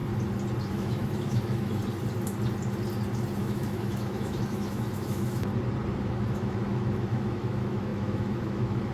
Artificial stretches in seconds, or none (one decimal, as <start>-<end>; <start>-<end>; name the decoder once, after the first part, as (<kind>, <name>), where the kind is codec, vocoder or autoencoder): 0.7-1.8 (autoencoder, DAC-VAE); 3.4-5.5; 6.0-8.9

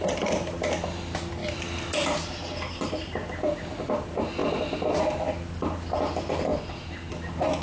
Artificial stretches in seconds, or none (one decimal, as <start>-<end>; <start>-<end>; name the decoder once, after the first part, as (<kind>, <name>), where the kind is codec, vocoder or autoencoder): none

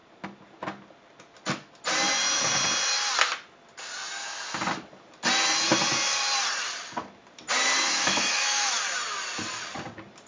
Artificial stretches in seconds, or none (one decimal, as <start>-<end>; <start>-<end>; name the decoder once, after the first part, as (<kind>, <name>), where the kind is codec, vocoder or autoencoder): 7.9-8.7 (autoencoder, DAC-VAE)

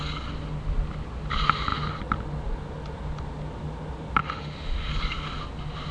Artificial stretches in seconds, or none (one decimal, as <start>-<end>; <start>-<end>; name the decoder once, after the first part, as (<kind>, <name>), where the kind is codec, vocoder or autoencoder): 4.2-4.9 (autoencoder, DAC-VAE)

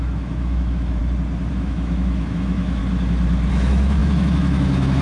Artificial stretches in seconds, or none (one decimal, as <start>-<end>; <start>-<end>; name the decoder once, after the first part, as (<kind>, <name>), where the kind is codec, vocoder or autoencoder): 0.0-1.0 (autoencoder, DAC-VAE); 1.5-2.8; 3.5-5.0

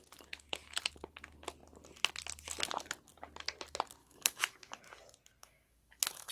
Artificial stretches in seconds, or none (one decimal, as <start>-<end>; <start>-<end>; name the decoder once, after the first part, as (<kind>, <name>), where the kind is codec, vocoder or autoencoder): 4.0-4.8 (autoencoder, DAC-VAE); 5.4-6.3

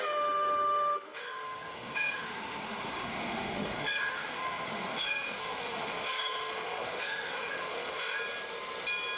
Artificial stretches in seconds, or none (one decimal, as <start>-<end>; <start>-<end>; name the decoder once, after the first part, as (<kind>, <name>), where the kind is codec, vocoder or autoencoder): 0.0-8.2 (autoencoder, DAC-VAE)

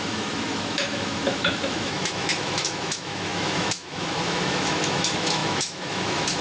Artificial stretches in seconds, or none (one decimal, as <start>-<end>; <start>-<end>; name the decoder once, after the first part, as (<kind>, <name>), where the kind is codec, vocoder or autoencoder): 0.0-6.4 (autoencoder, DAC-VAE)